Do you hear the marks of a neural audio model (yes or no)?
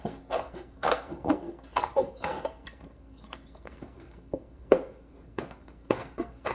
yes